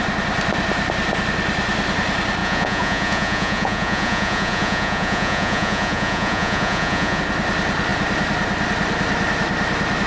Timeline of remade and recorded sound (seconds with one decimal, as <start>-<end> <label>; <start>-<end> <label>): 0.0-2.4 recorded; 2.4-7.2 remade; 7.2-10.1 recorded